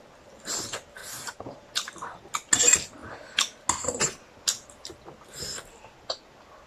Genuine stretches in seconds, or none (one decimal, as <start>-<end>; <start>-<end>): 0.0-1.0; 1.7-6.7